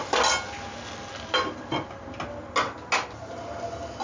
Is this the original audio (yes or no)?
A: yes